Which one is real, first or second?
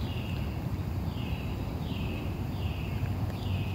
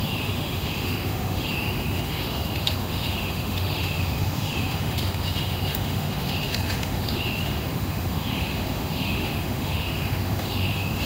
first